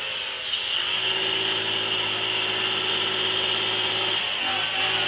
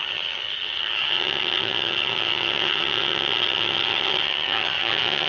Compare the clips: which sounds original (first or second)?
first